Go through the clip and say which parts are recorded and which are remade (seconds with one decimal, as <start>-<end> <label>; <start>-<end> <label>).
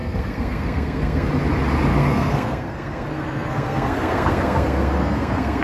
0.0-1.3 remade; 1.3-1.9 recorded; 1.9-5.6 remade